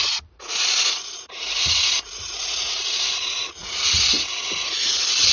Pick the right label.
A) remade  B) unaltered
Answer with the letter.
A